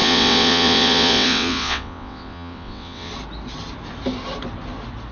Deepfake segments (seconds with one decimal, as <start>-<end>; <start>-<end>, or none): 0.0-3.1